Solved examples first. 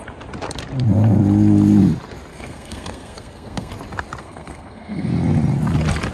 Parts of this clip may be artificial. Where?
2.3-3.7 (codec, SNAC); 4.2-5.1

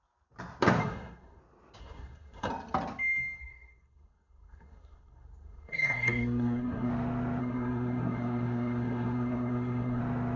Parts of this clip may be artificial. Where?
0.8-1.4 (codec, SNAC); 1.8-2.5; 3.4-6.9; 7.4-10.0

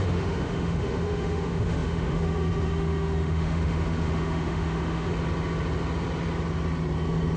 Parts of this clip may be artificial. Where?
0.0-5.1 (autoencoder, DAC-VAE)

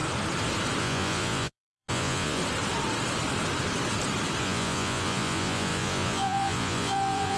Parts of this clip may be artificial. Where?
0.8-2.4 (vocoder, Vocos); 4.4-7.4

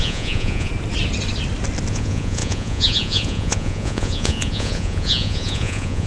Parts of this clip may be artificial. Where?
0.0-0.7 (vocoder, Vocos); 1.9-6.1

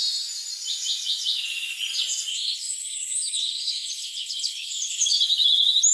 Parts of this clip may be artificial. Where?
2.3-5.2 (codec, HILCodec)

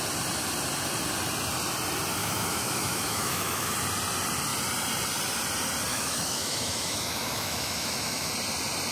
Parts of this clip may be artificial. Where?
2.2-3.7 (autoencoder, DAC-VAE); 5.9-8.3

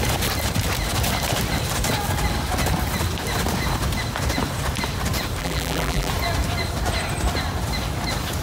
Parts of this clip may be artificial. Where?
5.4-6.1 (vocoder, BigVGAN v2)